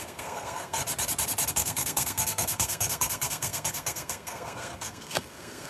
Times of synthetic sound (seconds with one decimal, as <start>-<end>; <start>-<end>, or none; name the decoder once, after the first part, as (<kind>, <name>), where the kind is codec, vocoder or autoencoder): 0.0-0.8 (codec, SNAC); 1.5-5.7

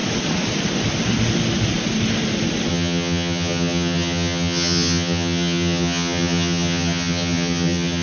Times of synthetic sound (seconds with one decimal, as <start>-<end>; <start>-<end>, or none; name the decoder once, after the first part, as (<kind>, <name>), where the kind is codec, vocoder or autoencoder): 2.7-8.0 (vocoder, HiFi-GAN)

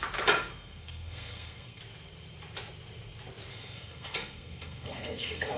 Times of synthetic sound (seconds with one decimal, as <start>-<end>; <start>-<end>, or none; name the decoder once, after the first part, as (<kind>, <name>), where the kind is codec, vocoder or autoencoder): 0.5-1.8 (codec, SNAC); 3.5-5.6

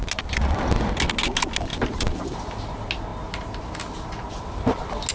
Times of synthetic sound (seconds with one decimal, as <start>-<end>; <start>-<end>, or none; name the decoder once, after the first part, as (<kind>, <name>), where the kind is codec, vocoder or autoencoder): none

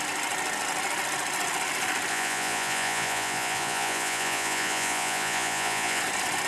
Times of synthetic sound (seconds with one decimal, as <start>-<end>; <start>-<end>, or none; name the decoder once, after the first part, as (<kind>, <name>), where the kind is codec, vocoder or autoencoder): 2.1-6.0 (vocoder, Vocos)

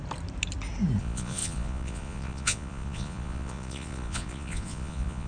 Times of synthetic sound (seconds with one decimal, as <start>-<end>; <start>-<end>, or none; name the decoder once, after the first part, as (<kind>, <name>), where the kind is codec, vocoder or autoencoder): 1.0-5.3 (vocoder, Vocos)